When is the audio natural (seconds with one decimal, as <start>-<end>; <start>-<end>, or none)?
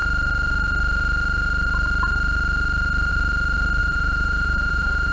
0.0-3.8